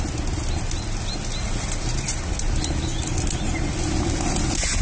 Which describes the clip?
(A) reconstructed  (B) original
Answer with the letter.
B